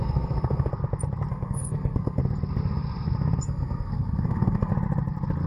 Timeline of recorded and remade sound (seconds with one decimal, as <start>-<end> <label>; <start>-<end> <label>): 0.0-0.7 remade; 0.7-1.3 recorded; 1.3-2.2 remade; 2.2-3.4 recorded; 3.4-4.7 remade; 4.7-5.5 recorded